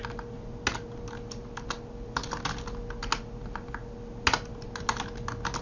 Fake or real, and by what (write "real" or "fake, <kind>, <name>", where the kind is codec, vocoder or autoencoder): real